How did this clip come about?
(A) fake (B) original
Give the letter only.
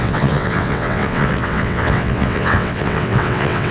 A